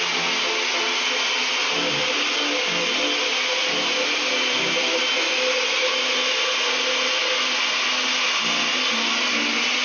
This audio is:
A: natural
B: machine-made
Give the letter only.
A